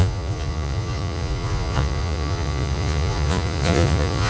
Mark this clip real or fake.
fake